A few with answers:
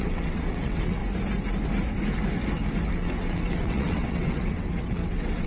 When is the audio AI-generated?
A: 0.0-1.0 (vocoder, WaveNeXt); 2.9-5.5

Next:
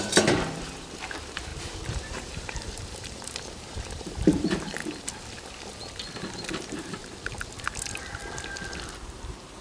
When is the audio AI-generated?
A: 0.0-4.8 (vocoder, BigVGAN v2); 6.5-7.0; 9.0-9.6

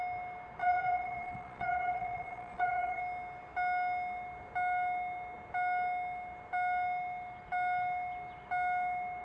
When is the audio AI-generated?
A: 0.6-3.0 (vocoder, Vocos)

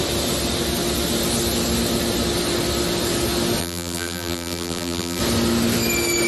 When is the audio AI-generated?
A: 3.6-5.2 (vocoder, BigVGAN v2)

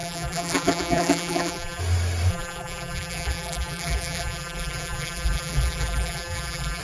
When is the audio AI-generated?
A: 0.0-1.8 (vocoder, BigVGAN v2); 2.3-6.8